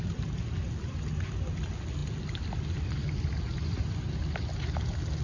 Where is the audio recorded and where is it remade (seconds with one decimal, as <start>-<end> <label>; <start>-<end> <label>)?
0.0-5.2 recorded